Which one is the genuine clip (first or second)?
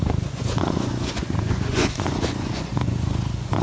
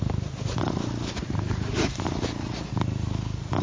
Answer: second